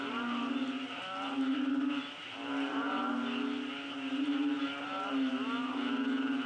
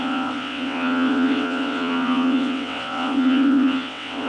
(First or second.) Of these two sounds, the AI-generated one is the second